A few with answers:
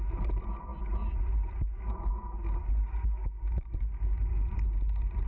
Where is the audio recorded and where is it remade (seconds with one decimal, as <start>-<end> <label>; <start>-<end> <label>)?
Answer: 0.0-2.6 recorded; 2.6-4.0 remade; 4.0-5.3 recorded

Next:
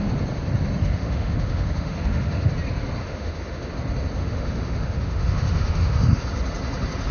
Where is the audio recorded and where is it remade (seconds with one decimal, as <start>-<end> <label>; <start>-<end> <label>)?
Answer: 0.0-0.8 recorded; 0.8-2.5 remade; 2.5-3.0 recorded; 3.0-3.7 remade; 3.7-4.2 recorded; 4.2-6.2 remade; 6.2-7.1 recorded

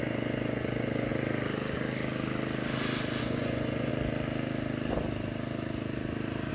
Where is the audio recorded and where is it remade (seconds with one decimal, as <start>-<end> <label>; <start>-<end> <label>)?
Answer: 0.0-1.1 remade; 1.1-3.2 recorded; 3.2-3.9 remade; 3.9-6.5 recorded

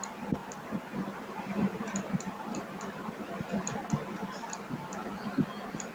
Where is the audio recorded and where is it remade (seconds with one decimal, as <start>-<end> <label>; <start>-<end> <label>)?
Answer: 0.0-0.4 recorded; 0.4-3.5 remade; 3.5-5.9 recorded

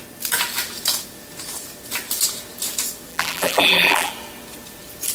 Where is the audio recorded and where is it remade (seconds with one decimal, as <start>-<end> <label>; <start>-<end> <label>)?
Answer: 0.0-3.1 recorded; 3.1-4.1 remade; 4.1-5.1 recorded

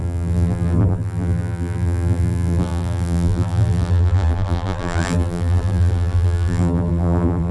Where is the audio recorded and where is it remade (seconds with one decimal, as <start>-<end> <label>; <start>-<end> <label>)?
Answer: 0.0-7.5 remade

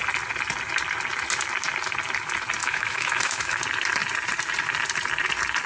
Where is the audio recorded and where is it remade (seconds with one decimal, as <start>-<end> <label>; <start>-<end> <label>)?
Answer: 0.0-2.6 recorded; 2.6-3.6 remade; 3.6-5.7 recorded